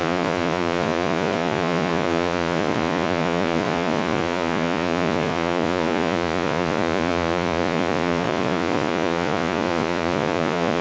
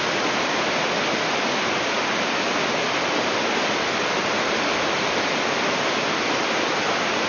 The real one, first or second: second